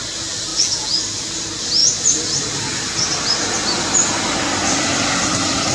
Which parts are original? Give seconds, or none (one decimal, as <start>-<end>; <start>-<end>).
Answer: 0.0-0.5; 1.0-5.7